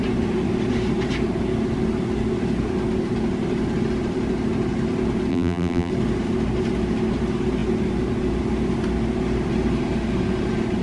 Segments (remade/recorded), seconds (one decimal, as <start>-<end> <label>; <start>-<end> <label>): 0.0-5.3 recorded; 5.3-5.9 remade; 5.9-10.8 recorded